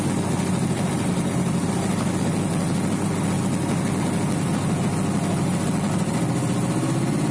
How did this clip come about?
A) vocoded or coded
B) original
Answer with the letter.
B